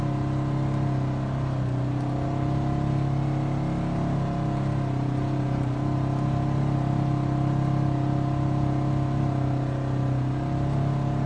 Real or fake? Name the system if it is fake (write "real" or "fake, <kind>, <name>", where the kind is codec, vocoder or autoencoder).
real